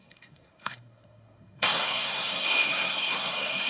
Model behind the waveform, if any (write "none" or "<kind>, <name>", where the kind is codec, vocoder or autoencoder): codec, SNAC